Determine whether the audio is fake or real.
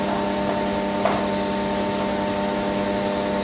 real